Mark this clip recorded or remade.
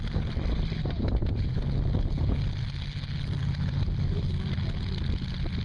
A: recorded